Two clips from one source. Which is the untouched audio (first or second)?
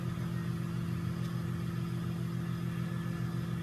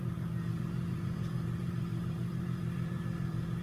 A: first